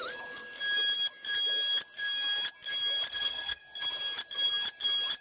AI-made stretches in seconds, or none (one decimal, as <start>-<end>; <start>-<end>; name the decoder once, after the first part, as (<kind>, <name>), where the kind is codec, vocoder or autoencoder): 3.1-3.6 (vocoder, HiFi-GAN)